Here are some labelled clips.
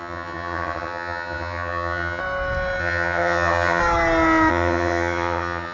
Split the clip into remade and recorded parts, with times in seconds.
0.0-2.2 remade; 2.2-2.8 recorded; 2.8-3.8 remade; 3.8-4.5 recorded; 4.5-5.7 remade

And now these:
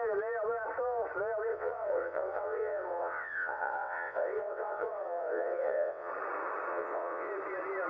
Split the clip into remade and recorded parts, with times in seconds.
0.0-1.5 recorded; 1.5-6.1 remade; 6.1-6.7 recorded; 6.7-7.3 remade; 7.3-7.9 recorded

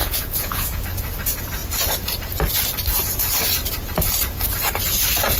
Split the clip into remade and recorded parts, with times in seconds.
0.0-0.8 remade; 0.8-5.4 recorded

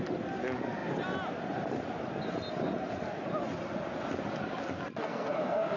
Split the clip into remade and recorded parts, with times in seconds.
0.0-5.0 recorded; 5.0-5.8 remade

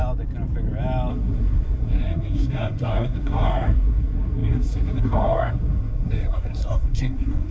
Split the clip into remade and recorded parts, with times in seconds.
0.0-1.1 recorded; 1.1-7.5 remade